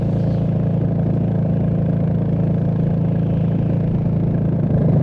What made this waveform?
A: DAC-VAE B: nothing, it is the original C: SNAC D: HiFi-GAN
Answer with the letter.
B